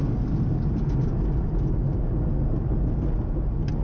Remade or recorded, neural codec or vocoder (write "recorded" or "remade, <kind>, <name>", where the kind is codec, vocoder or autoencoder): recorded